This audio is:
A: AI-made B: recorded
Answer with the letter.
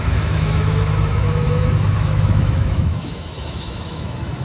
A